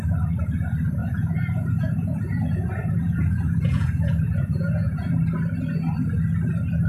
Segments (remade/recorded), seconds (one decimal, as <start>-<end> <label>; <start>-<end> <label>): 0.0-1.0 recorded; 1.0-5.1 remade; 5.1-6.9 recorded

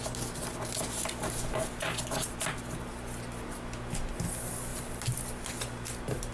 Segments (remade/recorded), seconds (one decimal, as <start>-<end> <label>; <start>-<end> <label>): 0.0-6.3 recorded

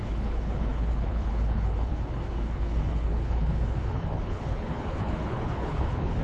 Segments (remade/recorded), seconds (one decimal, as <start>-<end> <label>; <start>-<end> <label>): 0.0-6.2 remade

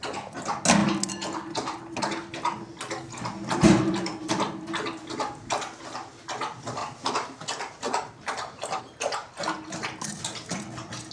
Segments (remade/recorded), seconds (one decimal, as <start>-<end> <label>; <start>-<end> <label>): 0.0-6.8 recorded; 6.8-8.8 remade; 8.8-11.1 recorded